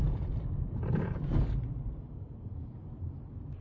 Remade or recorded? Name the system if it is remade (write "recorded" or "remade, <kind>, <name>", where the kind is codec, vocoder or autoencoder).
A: remade, vocoder, BigVGAN v2